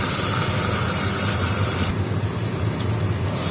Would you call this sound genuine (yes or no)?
yes